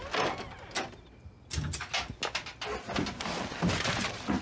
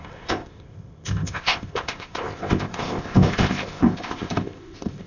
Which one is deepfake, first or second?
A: second